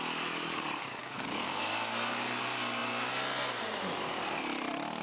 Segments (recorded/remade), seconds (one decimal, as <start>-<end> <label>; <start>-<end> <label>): 0.0-1.0 recorded; 1.0-1.6 remade; 1.6-5.0 recorded